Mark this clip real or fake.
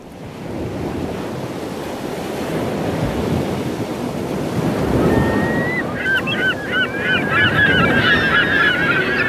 real